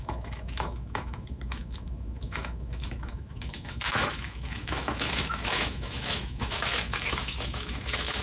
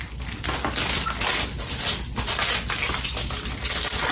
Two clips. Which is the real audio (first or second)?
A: second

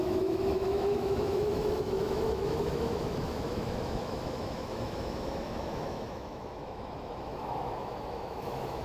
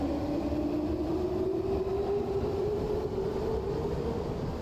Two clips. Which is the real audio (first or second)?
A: second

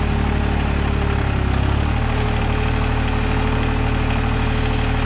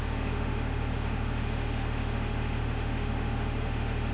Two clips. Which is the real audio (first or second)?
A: first